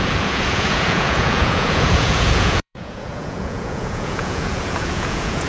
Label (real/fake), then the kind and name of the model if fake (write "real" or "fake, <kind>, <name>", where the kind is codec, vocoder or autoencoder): fake, vocoder, Vocos